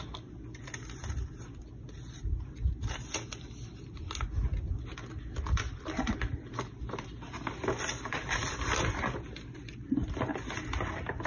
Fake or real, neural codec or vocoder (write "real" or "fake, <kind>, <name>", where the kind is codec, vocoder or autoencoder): real